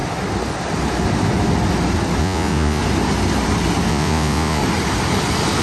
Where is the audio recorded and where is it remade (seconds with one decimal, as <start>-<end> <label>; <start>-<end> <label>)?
0.0-2.2 recorded; 2.2-2.8 remade; 2.8-3.9 recorded; 3.9-4.6 remade; 4.6-5.6 recorded